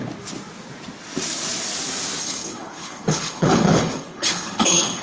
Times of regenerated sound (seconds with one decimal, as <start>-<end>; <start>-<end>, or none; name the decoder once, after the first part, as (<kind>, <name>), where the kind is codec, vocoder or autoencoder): 2.2-5.0 (codec, HILCodec)